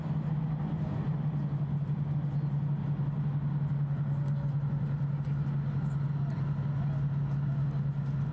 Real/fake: real